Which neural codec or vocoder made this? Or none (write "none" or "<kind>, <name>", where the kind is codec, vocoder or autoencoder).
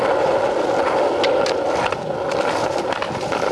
none